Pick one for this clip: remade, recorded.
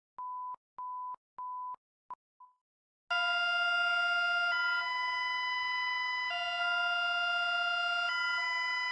recorded